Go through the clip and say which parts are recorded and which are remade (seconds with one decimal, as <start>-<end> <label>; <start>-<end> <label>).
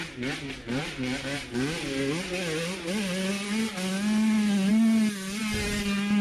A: 0.0-6.2 recorded